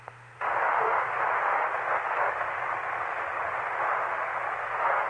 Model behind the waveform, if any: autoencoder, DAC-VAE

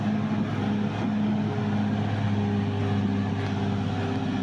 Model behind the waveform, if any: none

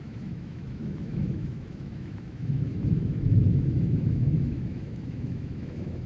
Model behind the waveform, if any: autoencoder, DAC-VAE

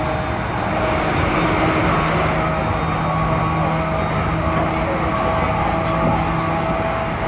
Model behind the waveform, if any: none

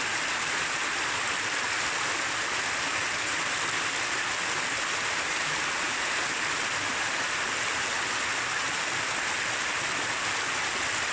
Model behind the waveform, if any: none